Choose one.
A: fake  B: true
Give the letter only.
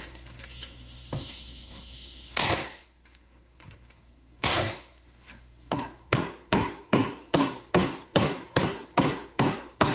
A